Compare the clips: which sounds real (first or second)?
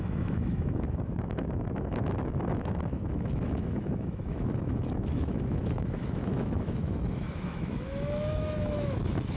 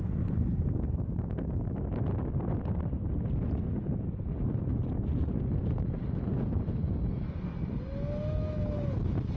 second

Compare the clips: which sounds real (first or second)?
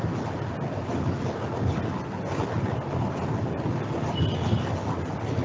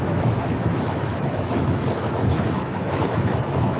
first